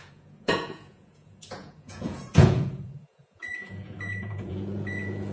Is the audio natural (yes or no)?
no